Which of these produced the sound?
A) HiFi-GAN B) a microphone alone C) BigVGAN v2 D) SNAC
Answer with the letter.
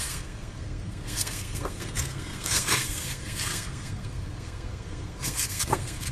D